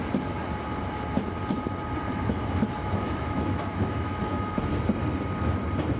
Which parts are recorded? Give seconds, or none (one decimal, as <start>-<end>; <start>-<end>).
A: 0.0-2.8; 4.6-6.0